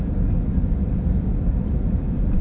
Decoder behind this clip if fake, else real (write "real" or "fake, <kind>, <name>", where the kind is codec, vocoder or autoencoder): real